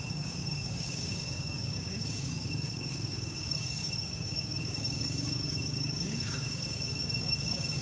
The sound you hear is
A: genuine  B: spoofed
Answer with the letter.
B